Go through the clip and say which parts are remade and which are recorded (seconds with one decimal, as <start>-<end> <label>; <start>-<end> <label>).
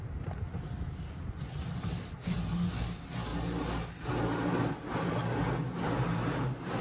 0.0-6.8 recorded